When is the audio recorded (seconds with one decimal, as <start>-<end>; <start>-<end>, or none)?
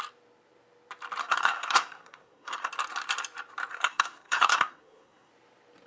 0.0-1.2; 2.7-3.7; 5.3-5.9